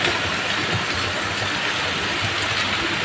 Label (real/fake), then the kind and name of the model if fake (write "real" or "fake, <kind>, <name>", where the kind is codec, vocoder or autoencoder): real